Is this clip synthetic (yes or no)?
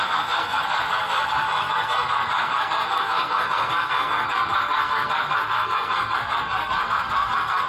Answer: yes